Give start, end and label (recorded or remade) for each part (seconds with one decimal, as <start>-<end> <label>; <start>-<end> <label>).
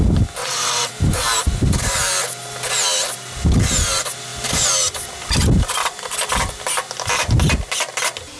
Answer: 0.0-0.4 recorded; 0.4-0.9 remade; 0.9-8.4 recorded